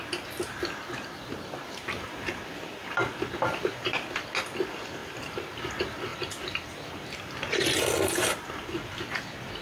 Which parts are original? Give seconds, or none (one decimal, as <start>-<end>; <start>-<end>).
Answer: 0.0-5.0; 5.6-6.1; 6.9-9.6